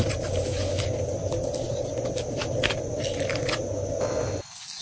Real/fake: real